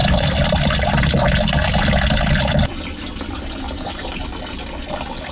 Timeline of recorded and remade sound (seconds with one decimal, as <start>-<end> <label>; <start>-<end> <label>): 0.0-4.3 remade; 4.3-5.3 recorded